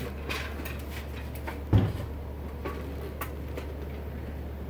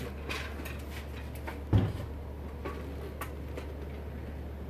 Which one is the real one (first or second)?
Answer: second